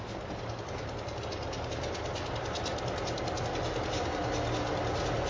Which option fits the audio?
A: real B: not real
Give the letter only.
A